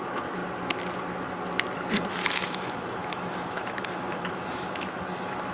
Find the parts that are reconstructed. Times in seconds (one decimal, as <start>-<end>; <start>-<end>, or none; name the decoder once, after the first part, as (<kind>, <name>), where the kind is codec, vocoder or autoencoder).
0.0-0.4 (autoencoder, DAC-VAE); 2.1-5.5